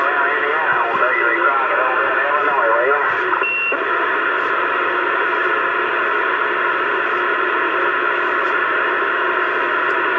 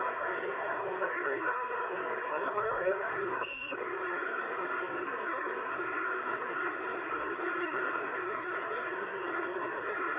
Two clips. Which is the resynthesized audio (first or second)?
second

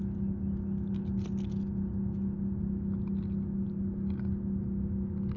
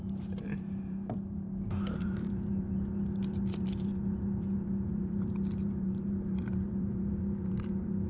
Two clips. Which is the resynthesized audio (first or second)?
second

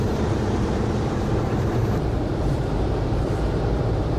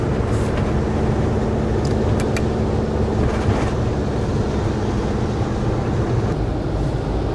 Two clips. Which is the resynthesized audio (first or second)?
first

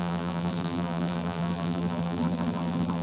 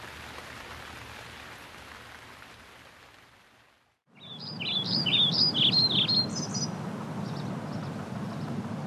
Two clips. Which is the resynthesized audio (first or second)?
first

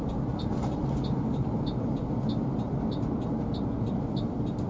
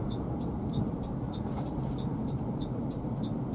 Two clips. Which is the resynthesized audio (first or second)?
second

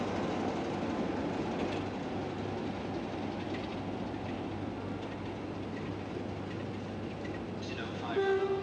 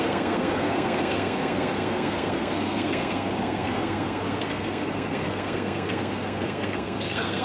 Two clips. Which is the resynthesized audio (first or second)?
second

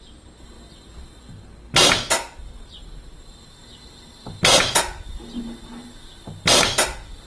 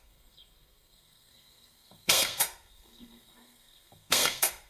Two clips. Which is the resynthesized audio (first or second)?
second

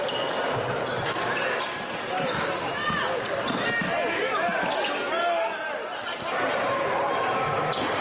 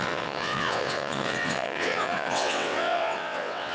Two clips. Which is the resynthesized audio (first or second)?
second